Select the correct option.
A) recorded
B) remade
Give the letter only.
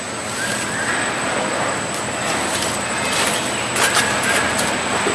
A